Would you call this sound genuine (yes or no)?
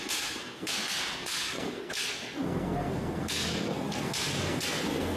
no